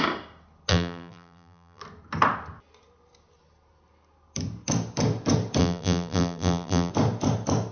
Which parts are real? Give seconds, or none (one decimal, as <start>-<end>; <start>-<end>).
0.0-0.7; 1.8-5.6; 6.9-7.7